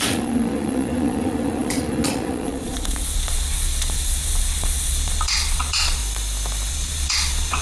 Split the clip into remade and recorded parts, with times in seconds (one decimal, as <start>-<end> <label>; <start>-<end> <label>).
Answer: 0.0-6.0 remade; 6.0-6.7 recorded; 6.7-7.6 remade